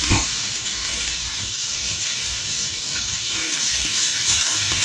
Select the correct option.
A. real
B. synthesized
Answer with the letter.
B